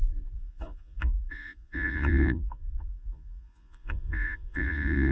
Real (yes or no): no